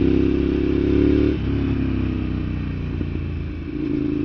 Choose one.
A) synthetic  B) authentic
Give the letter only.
B